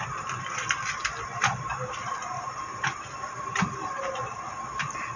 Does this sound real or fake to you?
real